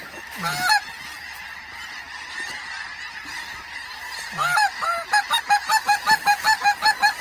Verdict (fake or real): real